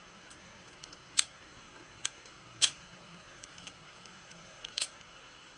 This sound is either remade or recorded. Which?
remade